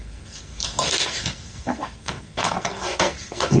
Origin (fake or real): fake